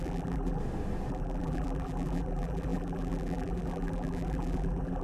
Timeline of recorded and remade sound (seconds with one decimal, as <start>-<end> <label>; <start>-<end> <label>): 0.0-0.6 remade; 0.6-1.1 recorded; 1.1-5.0 remade